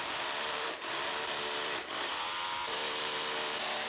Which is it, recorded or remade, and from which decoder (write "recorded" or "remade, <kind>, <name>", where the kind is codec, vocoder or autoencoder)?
remade, vocoder, BigVGAN v2